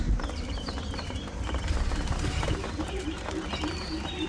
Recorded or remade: remade